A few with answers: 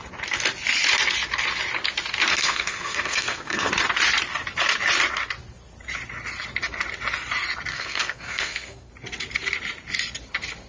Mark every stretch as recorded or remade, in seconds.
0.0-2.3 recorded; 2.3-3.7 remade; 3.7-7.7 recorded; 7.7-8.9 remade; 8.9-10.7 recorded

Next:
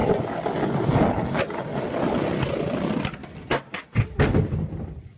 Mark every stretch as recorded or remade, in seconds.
0.0-5.2 recorded

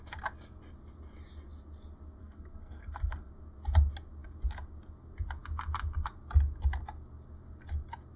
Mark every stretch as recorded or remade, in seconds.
0.0-2.2 recorded; 2.2-3.3 remade; 3.3-8.2 recorded

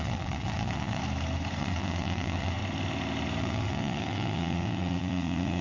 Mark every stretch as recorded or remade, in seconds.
0.0-1.0 remade; 1.0-1.6 recorded; 1.6-2.6 remade; 2.6-3.4 recorded; 3.4-5.6 remade

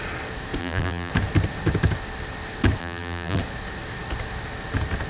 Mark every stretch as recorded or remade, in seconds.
0.0-0.6 recorded; 0.6-1.1 remade; 1.1-2.8 recorded; 2.8-3.4 remade; 3.4-5.1 recorded

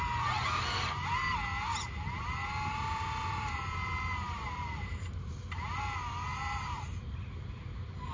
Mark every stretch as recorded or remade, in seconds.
0.0-2.4 recorded; 2.4-5.3 remade; 5.3-6.3 recorded; 6.3-8.1 remade

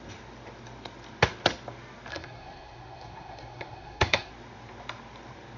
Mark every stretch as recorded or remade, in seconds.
0.0-2.1 recorded; 2.1-4.3 remade; 4.3-5.6 recorded

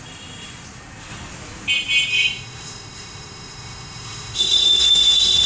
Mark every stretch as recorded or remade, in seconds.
0.0-2.1 recorded; 2.1-5.5 remade